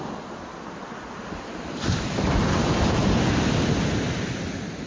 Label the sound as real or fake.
real